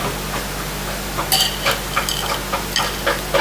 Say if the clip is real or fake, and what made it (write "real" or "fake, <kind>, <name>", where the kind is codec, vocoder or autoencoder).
real